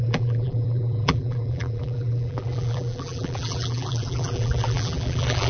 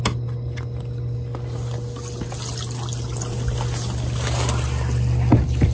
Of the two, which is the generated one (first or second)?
first